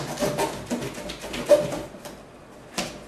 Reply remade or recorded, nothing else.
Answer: recorded